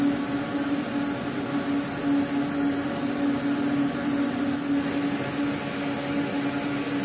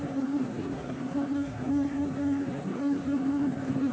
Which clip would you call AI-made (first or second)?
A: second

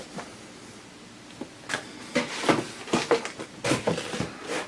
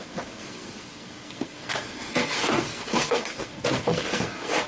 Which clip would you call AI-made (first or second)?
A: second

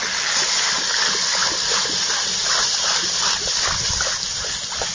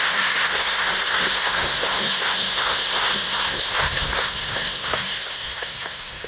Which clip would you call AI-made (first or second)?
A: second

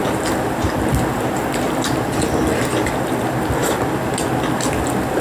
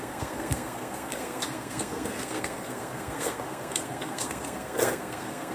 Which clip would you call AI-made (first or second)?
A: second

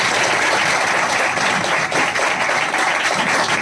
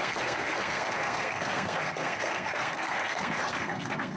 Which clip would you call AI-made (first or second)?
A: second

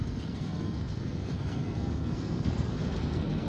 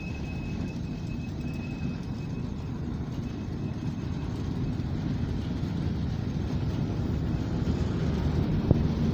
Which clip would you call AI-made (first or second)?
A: first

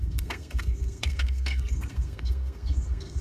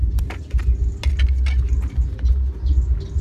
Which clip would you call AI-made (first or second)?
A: first